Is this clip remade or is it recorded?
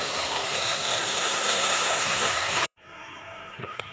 remade